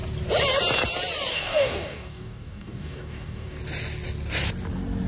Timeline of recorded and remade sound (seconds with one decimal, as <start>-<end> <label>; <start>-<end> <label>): 0.0-1.3 recorded; 1.3-3.6 remade; 3.6-5.1 recorded